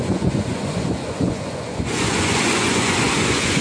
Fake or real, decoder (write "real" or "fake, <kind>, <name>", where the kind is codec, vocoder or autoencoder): fake, vocoder, Vocos